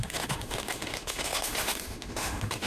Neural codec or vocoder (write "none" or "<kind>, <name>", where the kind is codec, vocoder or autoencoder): autoencoder, DAC-VAE